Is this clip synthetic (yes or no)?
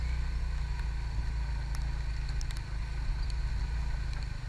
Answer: no